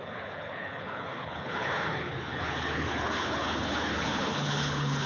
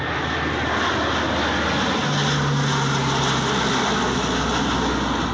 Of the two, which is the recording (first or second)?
second